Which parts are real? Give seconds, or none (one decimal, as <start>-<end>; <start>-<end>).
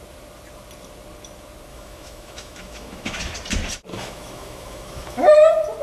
0.0-1.7; 3.2-3.9; 5.3-5.8